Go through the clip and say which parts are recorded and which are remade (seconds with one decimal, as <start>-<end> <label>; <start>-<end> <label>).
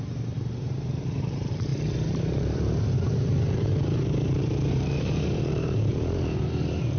0.0-7.0 remade